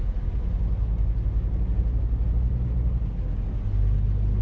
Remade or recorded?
recorded